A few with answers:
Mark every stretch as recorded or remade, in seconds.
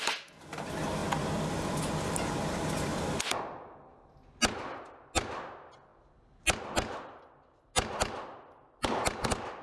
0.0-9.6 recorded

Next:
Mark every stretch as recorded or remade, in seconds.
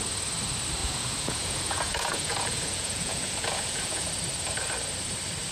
0.0-0.8 recorded; 0.8-4.1 remade; 4.1-5.5 recorded